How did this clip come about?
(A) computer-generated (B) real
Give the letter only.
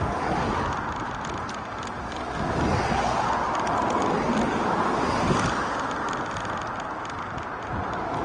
B